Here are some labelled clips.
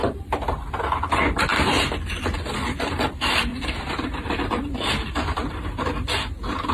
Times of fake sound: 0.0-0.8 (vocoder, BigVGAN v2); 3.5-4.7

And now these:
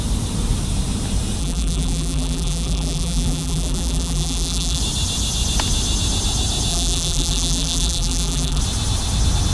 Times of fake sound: 1.4-4.8 (vocoder, BigVGAN v2); 6.7-8.6

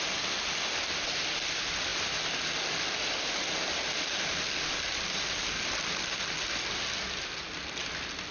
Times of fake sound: none

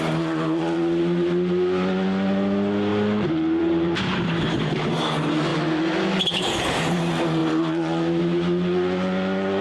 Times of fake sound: 2.9-4.7 (vocoder, BigVGAN v2); 7.4-8.2

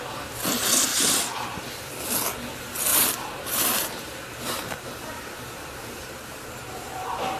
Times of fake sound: 0.9-1.9 (vocoder, BigVGAN v2); 2.9-7.4

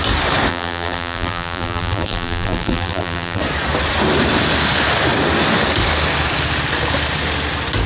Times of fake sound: 0.5-3.4 (vocoder, BigVGAN v2)

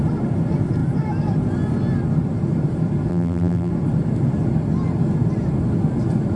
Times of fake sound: 3.1-3.7 (vocoder, BigVGAN v2)